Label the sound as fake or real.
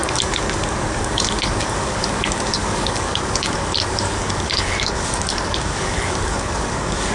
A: fake